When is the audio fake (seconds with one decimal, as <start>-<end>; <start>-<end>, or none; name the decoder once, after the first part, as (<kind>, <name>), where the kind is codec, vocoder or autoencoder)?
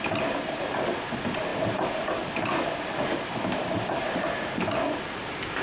none